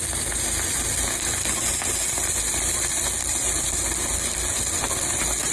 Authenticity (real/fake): real